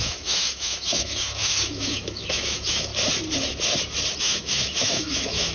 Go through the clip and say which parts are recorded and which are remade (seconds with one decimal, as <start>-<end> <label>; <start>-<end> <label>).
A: 0.0-2.9 remade; 2.9-4.2 recorded; 4.2-5.5 remade